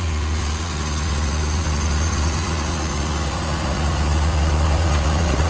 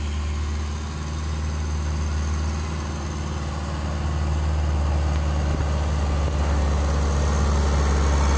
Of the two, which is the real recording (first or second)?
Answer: second